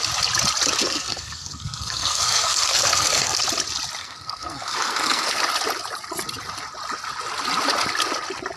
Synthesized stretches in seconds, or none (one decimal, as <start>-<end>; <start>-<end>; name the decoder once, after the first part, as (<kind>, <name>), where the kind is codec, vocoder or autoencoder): 0.8-3.4 (codec, SNAC); 4.0-5.4